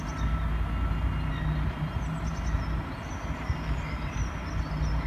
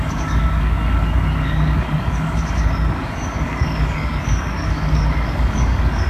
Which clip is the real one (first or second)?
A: first